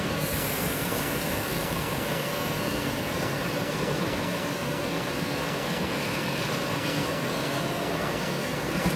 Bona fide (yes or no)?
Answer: no